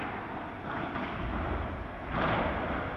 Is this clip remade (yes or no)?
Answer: no